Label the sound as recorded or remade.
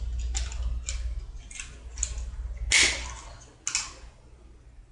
recorded